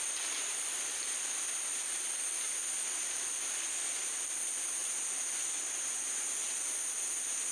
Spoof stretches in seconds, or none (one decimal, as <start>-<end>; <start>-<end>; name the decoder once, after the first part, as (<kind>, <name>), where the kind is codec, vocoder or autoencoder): none